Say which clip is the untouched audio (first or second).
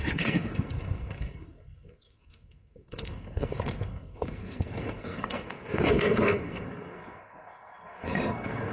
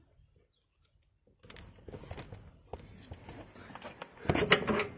second